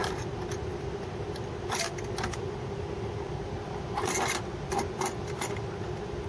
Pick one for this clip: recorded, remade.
recorded